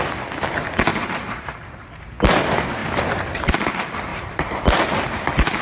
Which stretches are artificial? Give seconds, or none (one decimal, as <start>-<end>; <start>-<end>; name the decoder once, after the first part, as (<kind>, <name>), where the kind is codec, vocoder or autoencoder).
0.9-2.0 (vocoder, BigVGAN v2); 2.8-3.5; 4.1-4.6